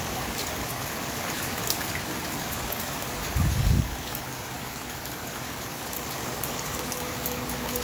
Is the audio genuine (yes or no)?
no